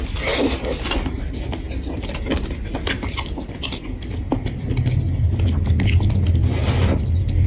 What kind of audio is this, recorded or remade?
recorded